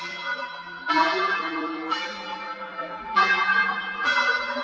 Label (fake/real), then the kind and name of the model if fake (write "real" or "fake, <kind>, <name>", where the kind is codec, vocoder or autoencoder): fake, vocoder, BigVGAN v2